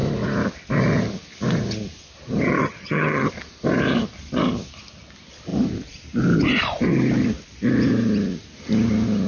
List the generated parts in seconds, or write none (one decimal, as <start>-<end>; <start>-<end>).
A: 2.6-3.3